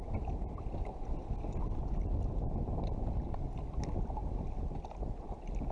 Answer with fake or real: real